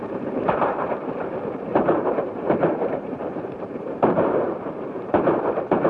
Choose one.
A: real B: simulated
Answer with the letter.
B